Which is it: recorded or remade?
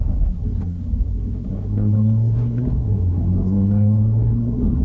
remade